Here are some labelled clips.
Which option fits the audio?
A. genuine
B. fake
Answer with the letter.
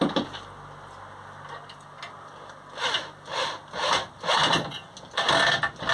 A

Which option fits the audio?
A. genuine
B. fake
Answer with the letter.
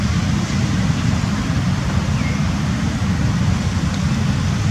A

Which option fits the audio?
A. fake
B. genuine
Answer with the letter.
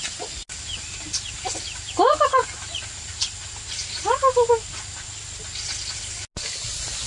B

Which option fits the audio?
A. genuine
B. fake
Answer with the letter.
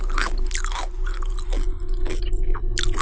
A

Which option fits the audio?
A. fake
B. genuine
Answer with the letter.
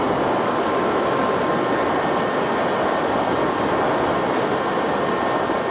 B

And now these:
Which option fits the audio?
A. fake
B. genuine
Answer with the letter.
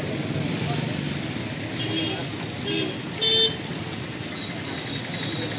B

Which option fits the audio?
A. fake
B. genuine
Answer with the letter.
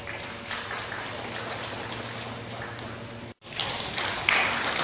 B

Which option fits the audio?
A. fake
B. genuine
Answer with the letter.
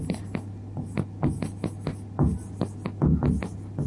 B